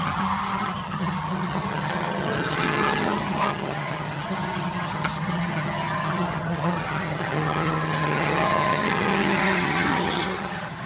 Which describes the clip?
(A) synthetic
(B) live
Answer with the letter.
A